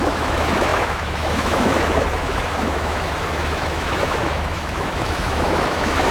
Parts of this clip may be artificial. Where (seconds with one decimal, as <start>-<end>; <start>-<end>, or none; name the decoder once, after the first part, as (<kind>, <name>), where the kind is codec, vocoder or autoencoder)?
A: 0.0-6.1 (autoencoder, DAC-VAE)